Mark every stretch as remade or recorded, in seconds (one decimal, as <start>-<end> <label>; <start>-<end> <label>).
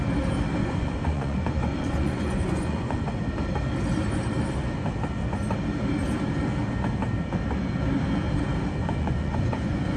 0.0-0.6 recorded; 0.6-3.1 remade; 3.1-8.8 recorded; 8.8-10.0 remade